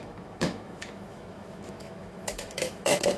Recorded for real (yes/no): no